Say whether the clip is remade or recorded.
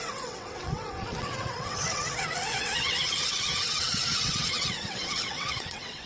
remade